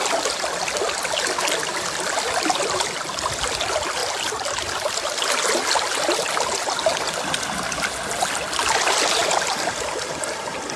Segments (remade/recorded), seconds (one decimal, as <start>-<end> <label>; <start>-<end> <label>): 0.0-10.8 recorded